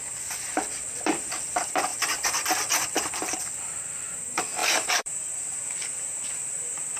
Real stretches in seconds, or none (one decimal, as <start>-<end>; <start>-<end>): 0.0-1.9; 3.4-4.6; 6.4-7.0